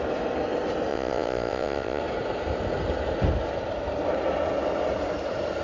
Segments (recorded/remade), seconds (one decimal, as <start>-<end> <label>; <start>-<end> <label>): 0.0-0.9 recorded; 0.9-2.0 remade; 2.0-5.6 recorded